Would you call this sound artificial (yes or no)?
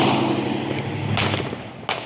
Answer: no